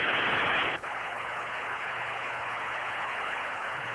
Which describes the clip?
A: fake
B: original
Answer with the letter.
A